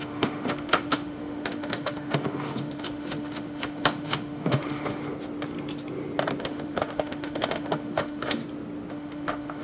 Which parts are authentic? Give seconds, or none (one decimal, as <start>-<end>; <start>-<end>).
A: 5.0-6.4; 8.4-8.9